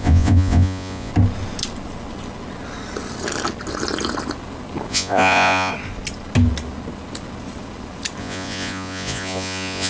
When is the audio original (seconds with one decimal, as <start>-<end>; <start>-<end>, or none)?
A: 1.1-4.9; 5.7-8.2